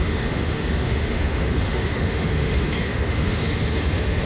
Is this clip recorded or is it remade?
remade